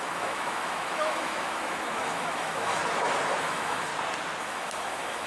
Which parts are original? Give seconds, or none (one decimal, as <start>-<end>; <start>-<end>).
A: 2.8-3.4; 3.9-4.4